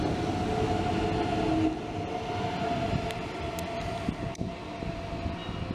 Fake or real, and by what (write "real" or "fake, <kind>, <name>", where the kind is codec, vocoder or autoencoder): real